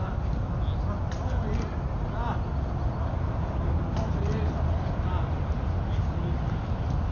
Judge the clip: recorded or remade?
recorded